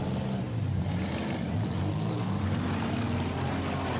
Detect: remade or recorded recorded